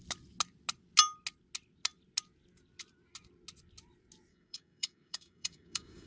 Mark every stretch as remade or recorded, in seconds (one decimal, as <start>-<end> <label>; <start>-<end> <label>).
0.0-4.3 recorded; 4.3-6.1 remade